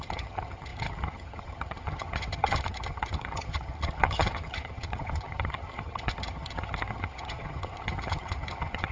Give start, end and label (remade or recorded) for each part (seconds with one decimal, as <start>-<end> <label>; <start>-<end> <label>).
0.0-8.9 remade